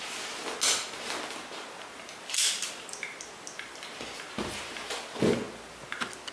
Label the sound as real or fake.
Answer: real